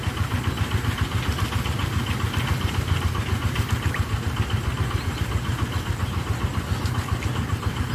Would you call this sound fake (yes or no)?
no